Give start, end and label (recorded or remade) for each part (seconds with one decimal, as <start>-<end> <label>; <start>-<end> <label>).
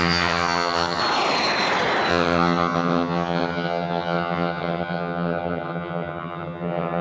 0.0-1.0 remade; 1.0-2.1 recorded; 2.1-7.0 remade